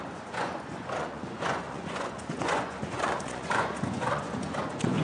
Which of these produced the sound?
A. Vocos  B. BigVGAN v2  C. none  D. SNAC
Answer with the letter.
A